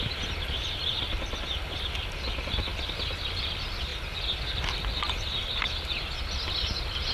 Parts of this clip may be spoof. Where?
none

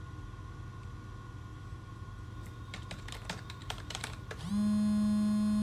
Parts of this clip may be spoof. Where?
1.5-3.0 (vocoder, BigVGAN v2); 3.6-4.5

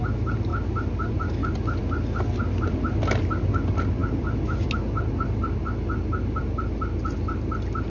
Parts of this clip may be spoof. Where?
none

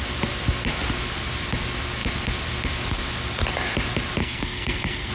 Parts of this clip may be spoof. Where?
4.2-5.1 (codec, SNAC)

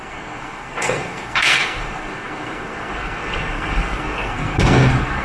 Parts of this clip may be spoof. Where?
0.0-5.2 (codec, SNAC)

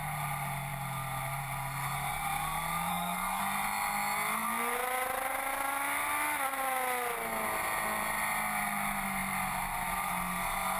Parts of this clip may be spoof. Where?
2.9-3.4 (codec, SNAC)